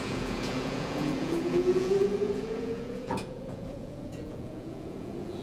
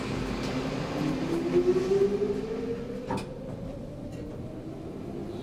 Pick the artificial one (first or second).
first